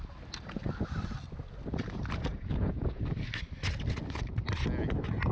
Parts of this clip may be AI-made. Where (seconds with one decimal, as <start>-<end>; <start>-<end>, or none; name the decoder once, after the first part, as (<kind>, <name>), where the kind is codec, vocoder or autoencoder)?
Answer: 2.3-3.0 (vocoder, Vocos)